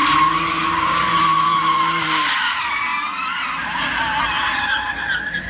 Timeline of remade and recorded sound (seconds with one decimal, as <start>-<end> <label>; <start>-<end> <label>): 0.0-0.8 recorded; 0.8-5.5 remade